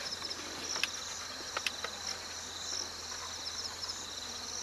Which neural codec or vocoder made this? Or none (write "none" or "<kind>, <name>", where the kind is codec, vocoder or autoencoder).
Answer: none